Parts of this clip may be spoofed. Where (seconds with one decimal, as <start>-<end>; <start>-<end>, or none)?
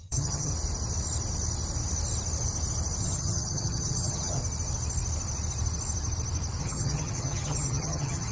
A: 0.0-0.5; 3.0-4.4; 6.6-8.3